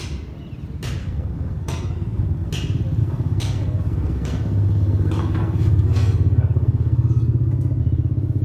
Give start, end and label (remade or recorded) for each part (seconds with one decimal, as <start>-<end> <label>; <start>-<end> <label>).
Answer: 0.0-1.0 recorded; 1.0-2.5 remade; 2.5-3.0 recorded; 3.0-7.8 remade; 7.8-8.4 recorded